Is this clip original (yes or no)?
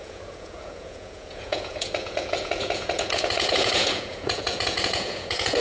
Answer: no